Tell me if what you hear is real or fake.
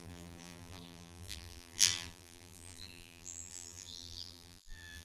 fake